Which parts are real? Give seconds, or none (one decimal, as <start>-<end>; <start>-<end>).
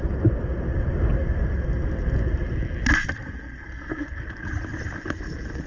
0.0-5.7